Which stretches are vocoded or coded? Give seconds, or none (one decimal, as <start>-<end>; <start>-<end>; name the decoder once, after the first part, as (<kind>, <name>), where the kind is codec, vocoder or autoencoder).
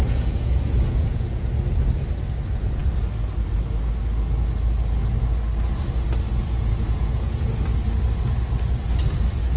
0.0-1.5 (vocoder, Vocos); 6.3-7.5